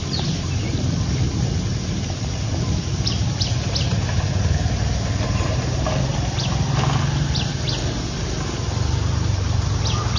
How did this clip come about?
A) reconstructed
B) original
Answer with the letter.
B